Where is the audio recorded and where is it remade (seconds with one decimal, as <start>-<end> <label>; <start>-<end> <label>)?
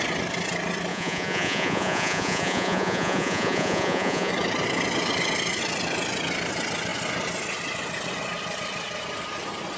0.0-0.9 recorded; 0.9-4.3 remade; 4.3-9.8 recorded